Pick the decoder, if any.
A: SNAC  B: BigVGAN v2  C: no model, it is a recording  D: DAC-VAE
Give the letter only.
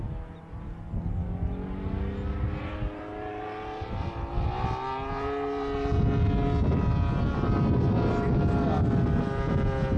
C